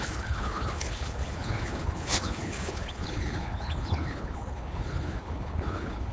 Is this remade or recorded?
remade